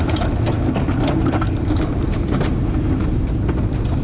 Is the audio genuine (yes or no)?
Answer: yes